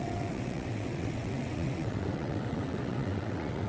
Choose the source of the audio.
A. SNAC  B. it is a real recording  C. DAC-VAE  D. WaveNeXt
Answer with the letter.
D